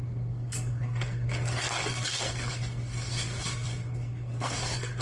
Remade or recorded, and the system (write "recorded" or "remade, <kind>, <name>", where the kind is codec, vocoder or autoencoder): remade, codec, SNAC